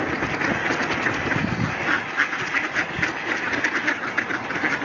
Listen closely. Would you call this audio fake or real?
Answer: real